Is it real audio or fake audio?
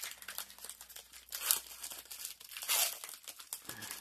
real